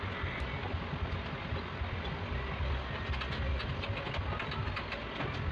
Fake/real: real